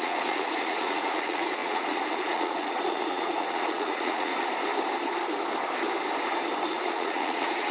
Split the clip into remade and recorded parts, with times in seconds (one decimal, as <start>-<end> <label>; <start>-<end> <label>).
0.0-4.3 remade; 4.3-6.6 recorded; 6.6-7.7 remade